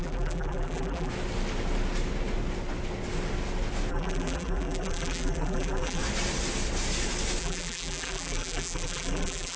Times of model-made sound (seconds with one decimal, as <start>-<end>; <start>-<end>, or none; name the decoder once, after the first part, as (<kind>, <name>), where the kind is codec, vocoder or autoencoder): 0.0-1.1 (vocoder, BigVGAN v2); 3.9-6.0; 7.4-9.6